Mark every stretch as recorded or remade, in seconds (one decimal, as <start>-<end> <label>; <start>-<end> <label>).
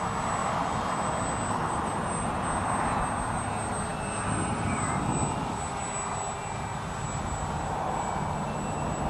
0.0-0.4 recorded; 0.4-1.1 remade; 1.1-9.1 recorded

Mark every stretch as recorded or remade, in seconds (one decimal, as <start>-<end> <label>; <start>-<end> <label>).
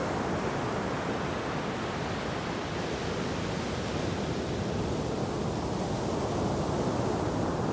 0.0-7.7 recorded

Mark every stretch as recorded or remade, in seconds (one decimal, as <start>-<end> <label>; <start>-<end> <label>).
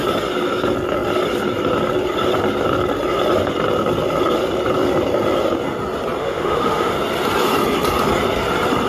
0.0-6.2 recorded; 6.2-6.9 remade; 6.9-8.9 recorded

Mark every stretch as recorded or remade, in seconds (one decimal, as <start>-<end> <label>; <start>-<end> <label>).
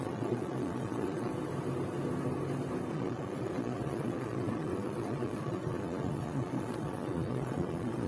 0.0-1.3 remade; 1.3-2.9 recorded; 2.9-8.1 remade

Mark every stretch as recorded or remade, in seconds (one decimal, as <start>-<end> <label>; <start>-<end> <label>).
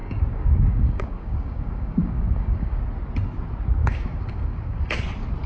0.0-2.8 remade; 2.8-3.8 recorded; 3.8-5.0 remade; 5.0-5.5 recorded